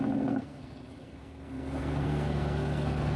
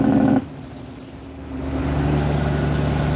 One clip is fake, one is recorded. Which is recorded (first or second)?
second